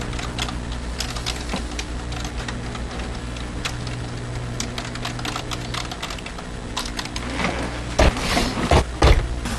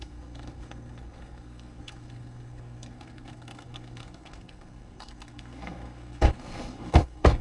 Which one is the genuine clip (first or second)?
first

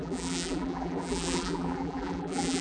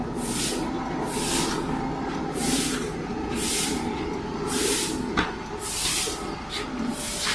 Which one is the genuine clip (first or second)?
second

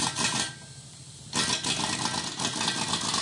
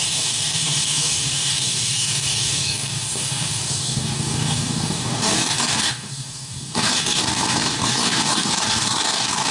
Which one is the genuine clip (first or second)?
first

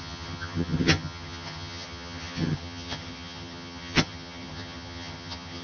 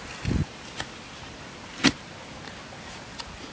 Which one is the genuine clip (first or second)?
second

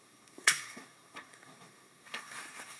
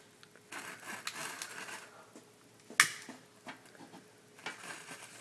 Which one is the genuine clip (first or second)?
second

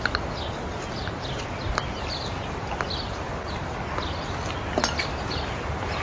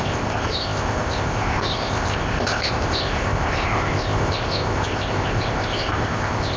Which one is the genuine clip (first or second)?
first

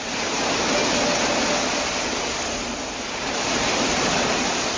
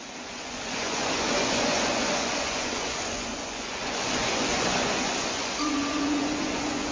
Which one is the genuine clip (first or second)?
first